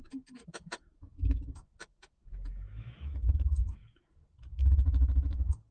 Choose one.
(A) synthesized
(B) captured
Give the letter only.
A